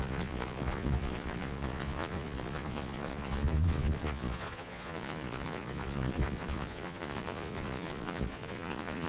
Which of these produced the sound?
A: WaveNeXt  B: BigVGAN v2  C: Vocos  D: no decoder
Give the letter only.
C